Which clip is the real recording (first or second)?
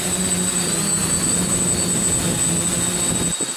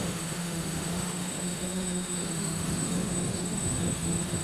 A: first